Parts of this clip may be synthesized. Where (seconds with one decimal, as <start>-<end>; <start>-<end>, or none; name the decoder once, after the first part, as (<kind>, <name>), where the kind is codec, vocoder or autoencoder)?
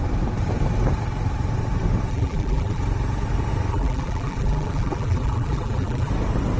2.1-2.8 (vocoder, BigVGAN v2); 3.7-6.1